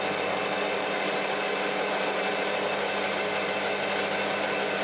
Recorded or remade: recorded